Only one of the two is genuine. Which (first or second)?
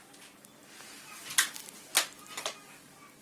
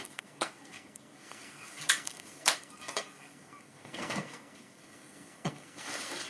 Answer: first